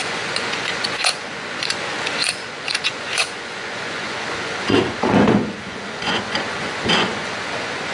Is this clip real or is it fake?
fake